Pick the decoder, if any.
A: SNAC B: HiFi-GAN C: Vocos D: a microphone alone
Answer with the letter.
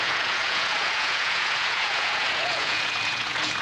C